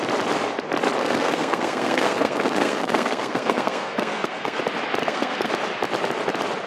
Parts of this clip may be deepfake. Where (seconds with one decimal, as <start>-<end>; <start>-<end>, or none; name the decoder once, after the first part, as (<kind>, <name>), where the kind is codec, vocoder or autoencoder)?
1.0-4.6 (codec, SNAC); 5.0-5.5